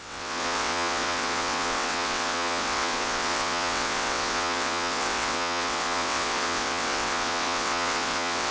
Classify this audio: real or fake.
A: fake